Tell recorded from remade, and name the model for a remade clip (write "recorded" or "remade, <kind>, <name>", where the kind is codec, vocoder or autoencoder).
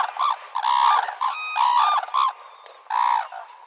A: recorded